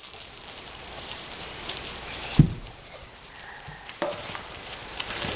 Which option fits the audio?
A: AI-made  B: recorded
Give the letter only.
A